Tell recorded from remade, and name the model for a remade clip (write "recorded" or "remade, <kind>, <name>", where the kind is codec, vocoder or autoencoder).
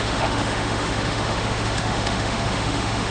remade, autoencoder, DAC-VAE